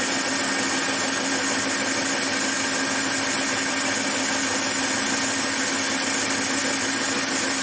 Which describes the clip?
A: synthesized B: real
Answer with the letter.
B